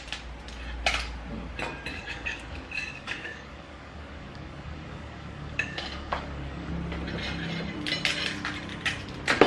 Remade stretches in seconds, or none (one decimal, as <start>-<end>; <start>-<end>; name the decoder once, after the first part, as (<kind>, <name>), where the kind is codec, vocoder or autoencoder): 1.9-6.7 (codec, DAC)